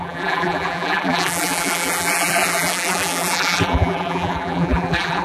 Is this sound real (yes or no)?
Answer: no